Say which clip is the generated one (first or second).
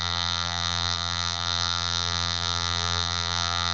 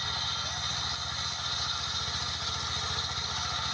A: first